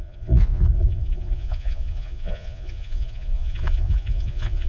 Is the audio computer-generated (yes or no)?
yes